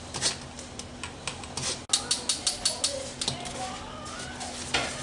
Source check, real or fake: real